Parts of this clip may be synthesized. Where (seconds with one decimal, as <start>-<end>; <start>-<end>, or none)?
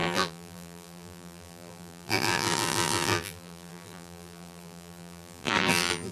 0.0-6.1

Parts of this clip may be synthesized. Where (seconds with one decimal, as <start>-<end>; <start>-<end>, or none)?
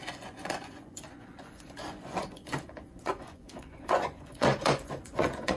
0.0-5.6